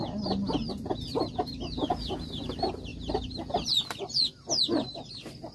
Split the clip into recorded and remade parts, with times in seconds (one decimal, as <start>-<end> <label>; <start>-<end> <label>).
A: 0.0-5.5 recorded